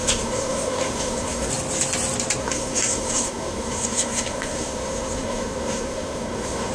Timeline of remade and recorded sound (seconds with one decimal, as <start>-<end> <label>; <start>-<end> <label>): 0.0-1.5 remade; 1.5-2.4 recorded; 2.4-6.7 remade